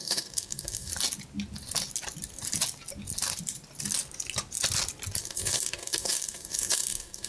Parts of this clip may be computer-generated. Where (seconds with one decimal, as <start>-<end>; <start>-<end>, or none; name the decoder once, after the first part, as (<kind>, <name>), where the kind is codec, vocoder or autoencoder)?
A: 0.0-0.9 (codec, DAC); 5.2-7.3